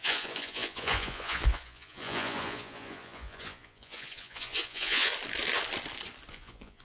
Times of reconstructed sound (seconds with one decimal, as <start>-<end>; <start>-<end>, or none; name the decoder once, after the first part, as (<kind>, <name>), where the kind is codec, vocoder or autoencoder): 0.0-5.1 (vocoder, Vocos); 6.3-6.8